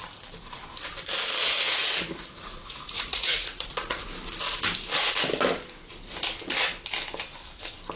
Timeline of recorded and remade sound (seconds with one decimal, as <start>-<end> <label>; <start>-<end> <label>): 0.0-1.4 recorded; 1.4-4.0 remade; 4.0-8.0 recorded